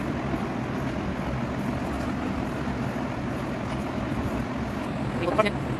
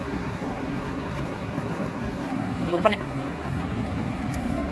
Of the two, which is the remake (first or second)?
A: second